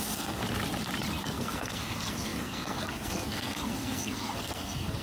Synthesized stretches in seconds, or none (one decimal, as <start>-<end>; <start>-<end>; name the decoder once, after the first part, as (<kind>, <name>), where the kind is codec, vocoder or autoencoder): 0.0-0.4 (codec, SNAC); 1.2-5.0